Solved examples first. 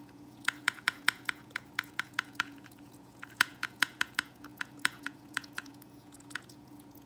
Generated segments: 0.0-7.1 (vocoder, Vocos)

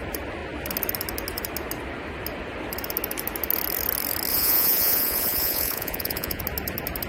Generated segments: 4.3-6.4 (vocoder, Vocos)

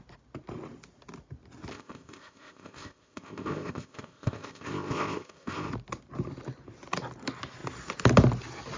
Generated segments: 1.7-5.7 (codec, ZipCodec)

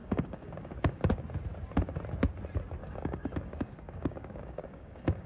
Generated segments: 0.0-1.1 (codec, DAC); 2.8-5.3

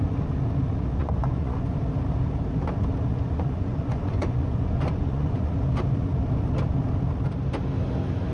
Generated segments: 1.0-1.8 (vocoder, Vocos); 3.1-5.5

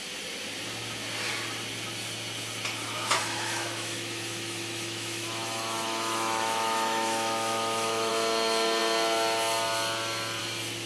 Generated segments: 3.2-8.1 (autoencoder, DAC-VAE)

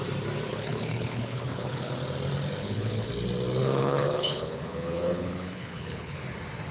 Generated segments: 0.5-1.9 (codec, HILCodec); 2.6-3.1; 3.6-6.2

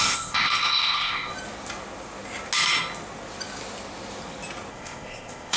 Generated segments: 0.0-1.3 (codec, ZipCodec); 4.7-5.6